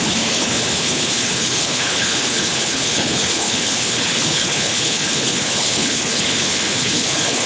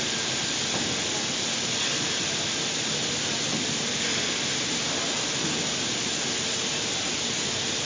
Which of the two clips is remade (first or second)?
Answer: first